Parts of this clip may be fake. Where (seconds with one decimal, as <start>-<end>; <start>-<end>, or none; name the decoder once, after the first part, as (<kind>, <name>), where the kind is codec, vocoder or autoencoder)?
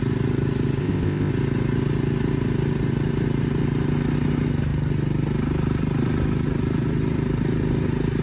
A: 0.8-1.3 (codec, ZipCodec)